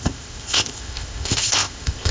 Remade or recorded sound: remade